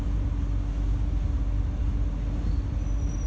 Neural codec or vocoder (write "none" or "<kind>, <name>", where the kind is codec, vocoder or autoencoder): none